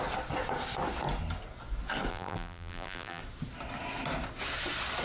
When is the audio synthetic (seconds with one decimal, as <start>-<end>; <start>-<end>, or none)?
2.1-3.2